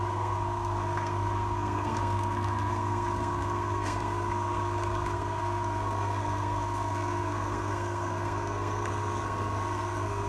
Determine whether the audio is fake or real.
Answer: fake